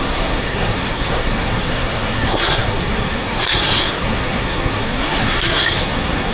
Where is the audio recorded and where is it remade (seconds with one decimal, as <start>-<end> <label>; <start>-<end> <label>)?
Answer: 0.0-6.3 remade